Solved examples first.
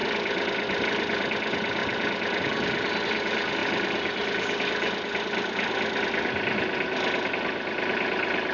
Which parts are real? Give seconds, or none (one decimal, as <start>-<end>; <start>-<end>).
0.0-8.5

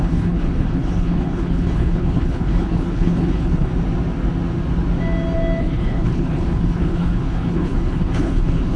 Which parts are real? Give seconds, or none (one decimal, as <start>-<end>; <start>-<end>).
3.7-5.6

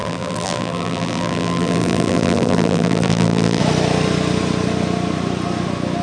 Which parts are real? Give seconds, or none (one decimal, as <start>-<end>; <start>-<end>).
3.6-6.0

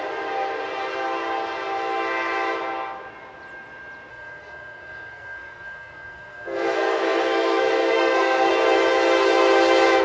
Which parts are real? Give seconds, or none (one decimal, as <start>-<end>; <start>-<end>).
0.0-4.1; 8.5-10.0

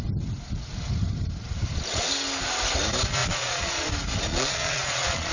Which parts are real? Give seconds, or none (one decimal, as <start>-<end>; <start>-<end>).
0.0-3.2; 3.9-4.3